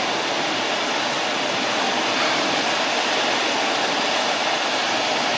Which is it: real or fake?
real